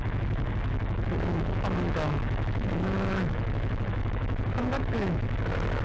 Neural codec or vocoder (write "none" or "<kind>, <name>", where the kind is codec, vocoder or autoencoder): autoencoder, DAC-VAE